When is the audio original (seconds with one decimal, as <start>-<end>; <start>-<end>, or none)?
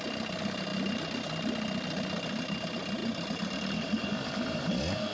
0.0-5.1